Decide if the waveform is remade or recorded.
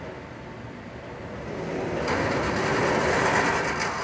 recorded